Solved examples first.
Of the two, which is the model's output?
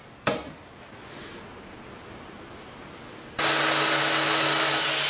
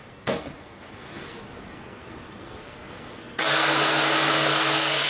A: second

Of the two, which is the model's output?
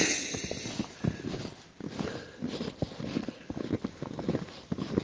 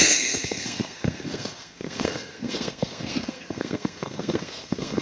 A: second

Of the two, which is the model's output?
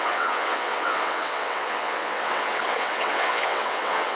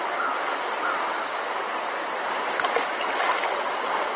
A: first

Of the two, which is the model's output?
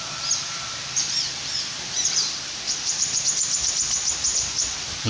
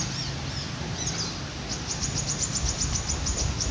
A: first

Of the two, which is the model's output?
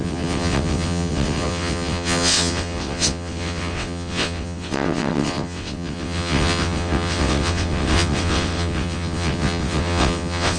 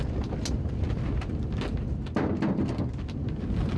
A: first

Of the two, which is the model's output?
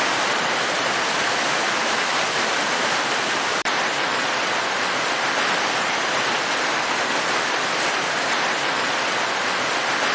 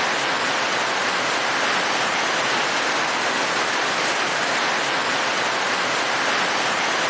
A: first